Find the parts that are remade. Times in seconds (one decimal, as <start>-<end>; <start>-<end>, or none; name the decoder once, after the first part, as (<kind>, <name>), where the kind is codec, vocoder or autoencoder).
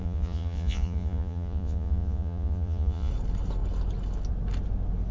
0.0-3.1 (vocoder, Vocos)